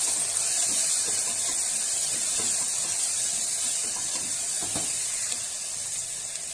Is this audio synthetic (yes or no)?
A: no